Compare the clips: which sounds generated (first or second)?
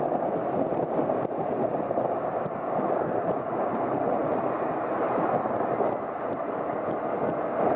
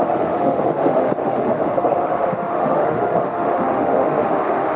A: second